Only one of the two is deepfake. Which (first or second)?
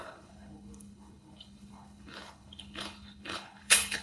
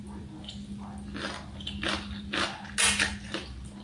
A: first